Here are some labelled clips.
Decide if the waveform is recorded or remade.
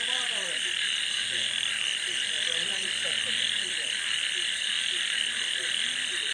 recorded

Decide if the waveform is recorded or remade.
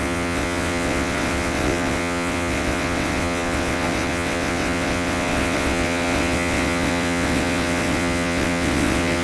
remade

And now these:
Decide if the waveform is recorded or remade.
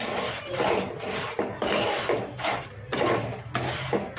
recorded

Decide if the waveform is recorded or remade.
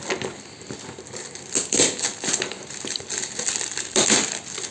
recorded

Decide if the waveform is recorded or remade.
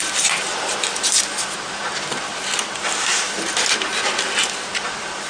recorded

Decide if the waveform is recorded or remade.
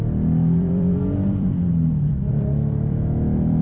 remade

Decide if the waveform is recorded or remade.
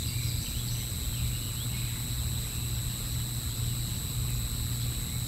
recorded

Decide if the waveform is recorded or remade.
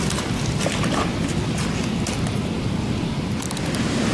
recorded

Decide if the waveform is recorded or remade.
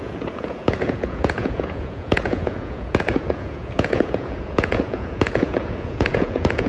remade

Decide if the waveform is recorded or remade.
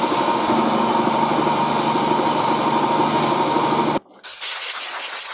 recorded